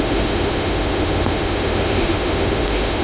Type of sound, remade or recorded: remade